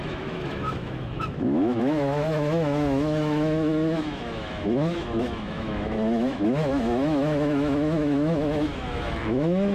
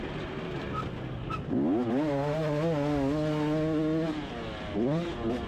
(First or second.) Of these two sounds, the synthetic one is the first